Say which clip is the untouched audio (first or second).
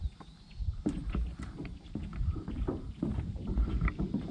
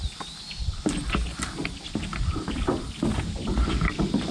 second